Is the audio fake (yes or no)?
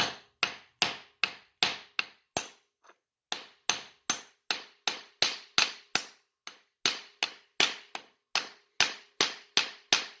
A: no